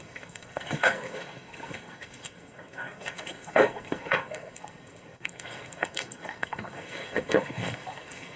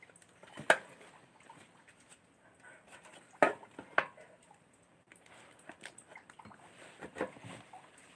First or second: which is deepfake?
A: first